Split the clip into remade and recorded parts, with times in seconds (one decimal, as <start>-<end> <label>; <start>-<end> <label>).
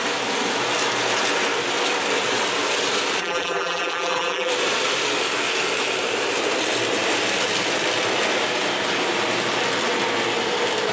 0.0-3.2 recorded; 3.2-4.5 remade; 4.5-10.9 recorded